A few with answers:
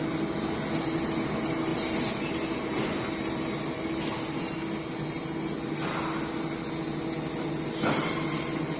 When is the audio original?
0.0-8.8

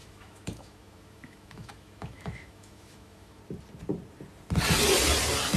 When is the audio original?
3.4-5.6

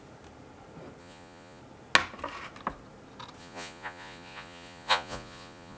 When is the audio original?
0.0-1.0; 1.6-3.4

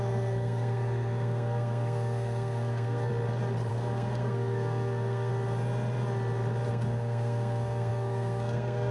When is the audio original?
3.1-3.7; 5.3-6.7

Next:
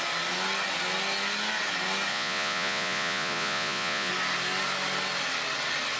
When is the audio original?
0.0-2.1; 4.1-6.0